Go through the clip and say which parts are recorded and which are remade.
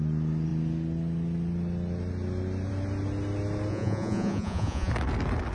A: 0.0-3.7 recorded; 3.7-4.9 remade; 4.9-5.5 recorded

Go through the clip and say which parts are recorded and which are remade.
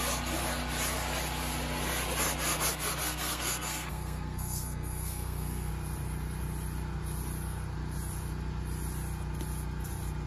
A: 0.0-3.0 recorded; 3.0-5.7 remade; 5.7-10.3 recorded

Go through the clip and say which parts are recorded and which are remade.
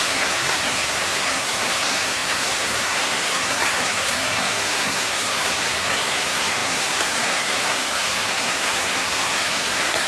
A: 0.0-10.1 remade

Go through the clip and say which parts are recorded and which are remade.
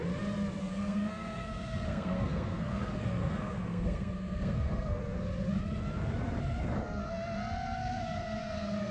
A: 0.0-0.6 recorded; 0.6-5.0 remade; 5.0-7.8 recorded; 7.8-8.9 remade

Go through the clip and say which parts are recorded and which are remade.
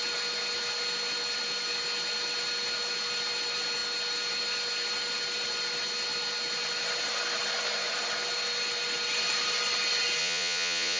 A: 0.0-10.2 recorded; 10.2-11.0 remade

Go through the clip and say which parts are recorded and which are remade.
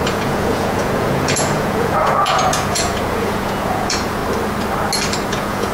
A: 0.0-4.2 remade; 4.2-5.3 recorded; 5.3-5.7 remade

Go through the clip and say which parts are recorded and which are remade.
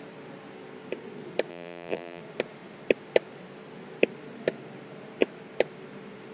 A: 0.0-1.5 recorded; 1.5-2.2 remade; 2.2-6.3 recorded